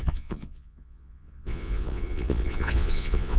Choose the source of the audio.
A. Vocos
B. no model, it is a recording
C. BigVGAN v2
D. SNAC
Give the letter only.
A